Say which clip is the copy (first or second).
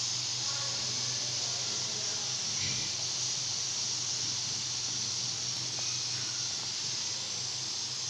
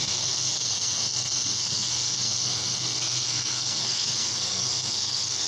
second